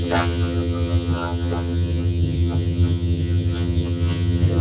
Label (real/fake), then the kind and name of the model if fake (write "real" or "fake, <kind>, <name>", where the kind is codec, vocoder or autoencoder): fake, vocoder, HiFi-GAN